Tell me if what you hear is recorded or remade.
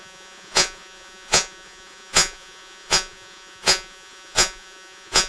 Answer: remade